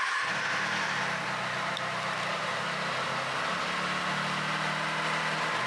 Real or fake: real